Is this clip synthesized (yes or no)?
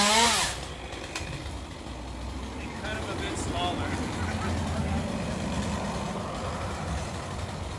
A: no